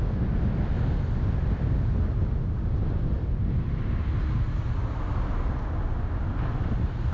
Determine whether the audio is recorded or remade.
recorded